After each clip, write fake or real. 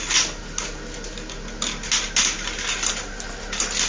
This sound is real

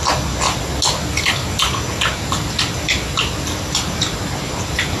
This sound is real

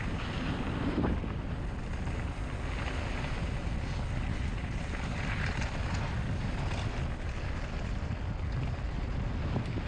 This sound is real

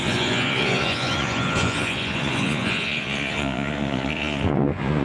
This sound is fake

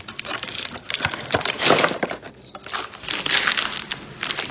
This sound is real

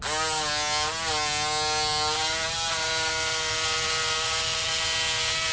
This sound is real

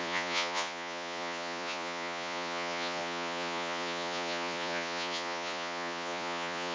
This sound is fake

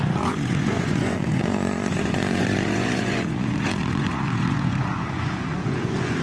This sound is fake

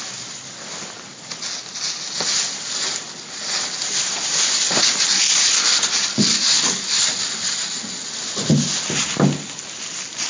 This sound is real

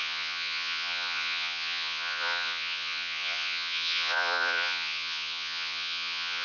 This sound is fake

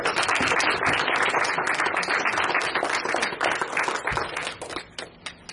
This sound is real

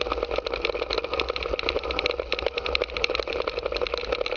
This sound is real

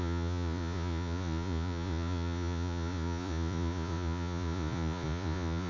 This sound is fake